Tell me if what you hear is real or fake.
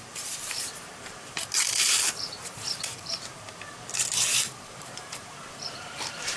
fake